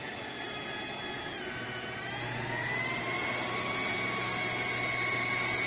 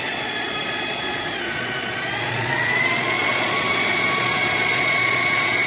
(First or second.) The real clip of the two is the first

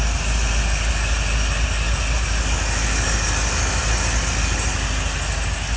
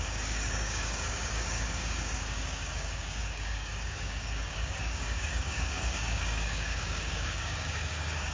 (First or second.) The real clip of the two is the first